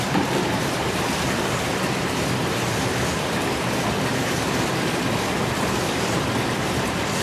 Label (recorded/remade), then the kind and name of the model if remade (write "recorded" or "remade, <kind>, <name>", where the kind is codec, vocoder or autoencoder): remade, vocoder, BigVGAN v2